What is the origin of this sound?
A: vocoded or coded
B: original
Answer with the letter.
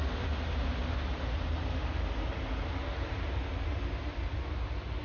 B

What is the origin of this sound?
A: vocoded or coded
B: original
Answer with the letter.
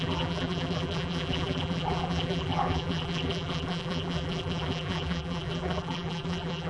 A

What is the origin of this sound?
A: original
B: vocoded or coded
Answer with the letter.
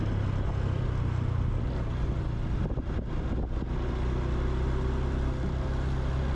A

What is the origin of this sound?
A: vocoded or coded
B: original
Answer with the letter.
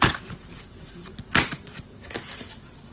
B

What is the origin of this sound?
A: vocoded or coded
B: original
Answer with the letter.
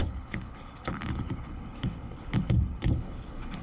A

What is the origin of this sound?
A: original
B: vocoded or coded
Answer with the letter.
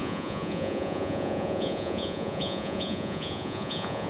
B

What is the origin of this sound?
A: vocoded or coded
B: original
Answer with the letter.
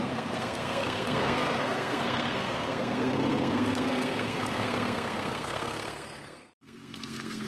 A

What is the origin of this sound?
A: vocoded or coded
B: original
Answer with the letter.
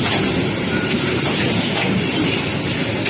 B